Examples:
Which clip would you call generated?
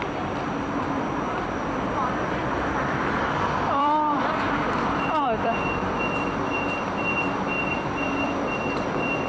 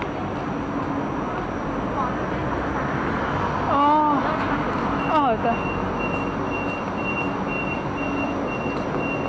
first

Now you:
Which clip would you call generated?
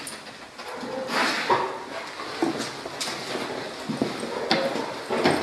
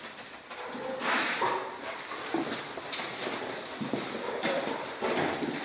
second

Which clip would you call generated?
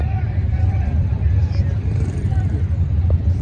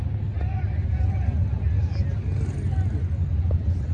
first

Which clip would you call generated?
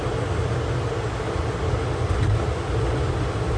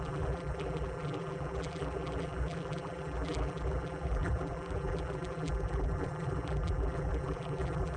second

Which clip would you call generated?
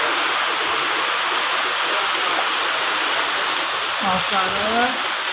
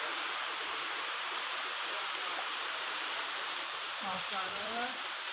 second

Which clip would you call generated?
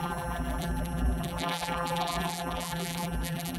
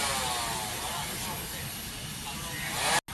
first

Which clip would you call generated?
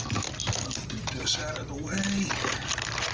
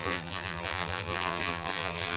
second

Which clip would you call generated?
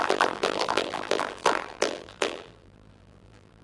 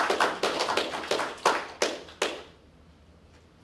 first